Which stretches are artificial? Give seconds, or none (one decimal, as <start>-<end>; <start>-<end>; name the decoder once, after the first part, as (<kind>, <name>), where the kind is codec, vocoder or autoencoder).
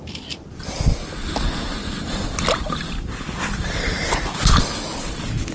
none